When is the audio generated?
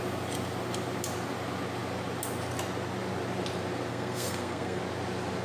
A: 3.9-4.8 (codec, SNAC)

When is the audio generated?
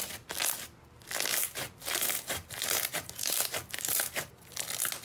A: 1.3-4.3 (vocoder, BigVGAN v2)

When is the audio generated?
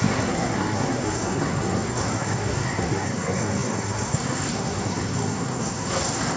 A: 0.0-6.4 (codec, SNAC)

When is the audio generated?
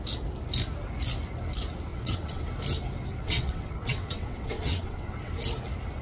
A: 1.9-2.4 (vocoder, WaveNeXt); 3.1-5.3